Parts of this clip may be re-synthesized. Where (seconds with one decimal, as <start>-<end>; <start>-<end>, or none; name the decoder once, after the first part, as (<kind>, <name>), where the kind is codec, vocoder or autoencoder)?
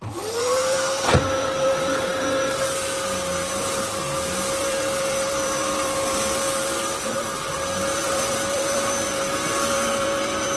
0.0-2.1 (vocoder, BigVGAN v2); 4.6-10.6